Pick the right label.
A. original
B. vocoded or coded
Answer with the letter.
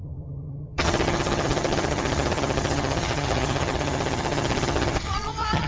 B